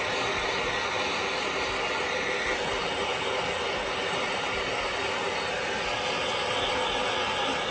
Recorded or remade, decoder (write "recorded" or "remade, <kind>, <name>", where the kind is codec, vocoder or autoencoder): recorded